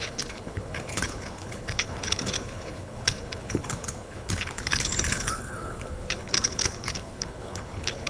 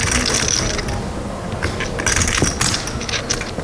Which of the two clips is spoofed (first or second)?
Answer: first